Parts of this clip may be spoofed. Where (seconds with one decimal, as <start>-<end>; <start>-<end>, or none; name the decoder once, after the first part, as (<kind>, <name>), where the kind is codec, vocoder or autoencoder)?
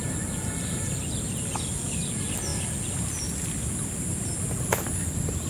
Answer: none